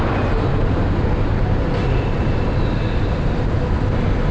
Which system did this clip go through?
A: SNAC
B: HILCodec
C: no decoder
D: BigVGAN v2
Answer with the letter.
C